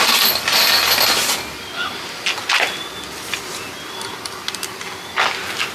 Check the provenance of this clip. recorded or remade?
recorded